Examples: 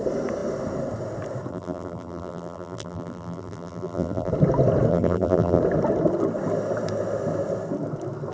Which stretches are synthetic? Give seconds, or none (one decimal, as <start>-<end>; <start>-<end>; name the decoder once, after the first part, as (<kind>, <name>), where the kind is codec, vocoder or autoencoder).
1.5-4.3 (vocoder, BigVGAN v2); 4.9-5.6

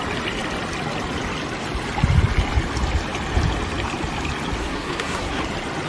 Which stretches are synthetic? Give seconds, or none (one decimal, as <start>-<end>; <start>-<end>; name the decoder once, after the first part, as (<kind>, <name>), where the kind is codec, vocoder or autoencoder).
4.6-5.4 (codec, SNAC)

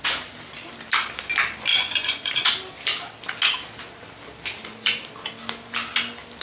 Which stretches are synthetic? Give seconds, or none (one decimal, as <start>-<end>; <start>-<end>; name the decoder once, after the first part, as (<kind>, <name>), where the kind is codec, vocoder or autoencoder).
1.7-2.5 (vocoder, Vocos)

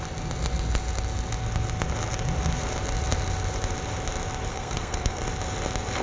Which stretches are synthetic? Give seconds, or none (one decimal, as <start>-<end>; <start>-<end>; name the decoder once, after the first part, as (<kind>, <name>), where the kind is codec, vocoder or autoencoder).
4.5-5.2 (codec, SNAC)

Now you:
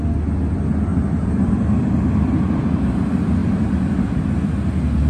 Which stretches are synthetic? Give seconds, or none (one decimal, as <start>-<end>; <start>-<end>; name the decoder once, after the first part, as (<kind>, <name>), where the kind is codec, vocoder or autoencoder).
0.9-1.6 (vocoder, BigVGAN v2)

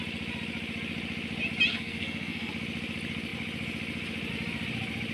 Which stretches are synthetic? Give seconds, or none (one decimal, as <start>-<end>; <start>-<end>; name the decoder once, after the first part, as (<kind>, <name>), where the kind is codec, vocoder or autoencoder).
1.7-2.5 (codec, SNAC)